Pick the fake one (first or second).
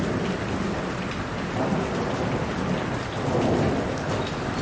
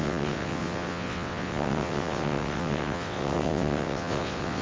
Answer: second